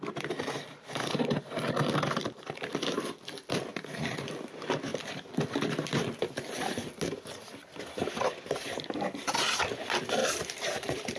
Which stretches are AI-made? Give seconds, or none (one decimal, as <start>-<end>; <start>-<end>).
3.7-4.2; 10.2-11.2